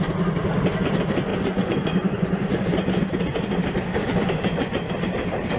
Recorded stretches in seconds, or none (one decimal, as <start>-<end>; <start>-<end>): 0.0-1.3; 3.0-4.0; 4.9-5.6